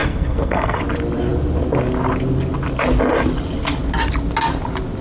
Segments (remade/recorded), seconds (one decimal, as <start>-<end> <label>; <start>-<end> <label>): 0.0-0.8 remade; 0.8-5.0 recorded